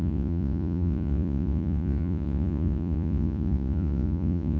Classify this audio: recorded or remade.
remade